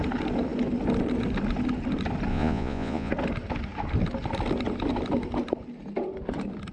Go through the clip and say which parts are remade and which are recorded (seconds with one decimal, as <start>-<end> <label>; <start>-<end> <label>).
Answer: 0.0-2.3 recorded; 2.3-3.1 remade; 3.1-6.7 recorded